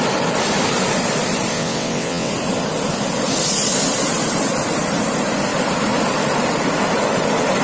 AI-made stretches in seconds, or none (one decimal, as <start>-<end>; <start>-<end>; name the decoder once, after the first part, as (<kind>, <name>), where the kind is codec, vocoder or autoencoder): 1.5-2.3 (vocoder, WaveNeXt)